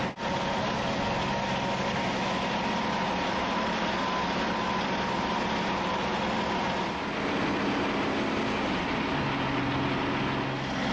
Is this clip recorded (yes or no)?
yes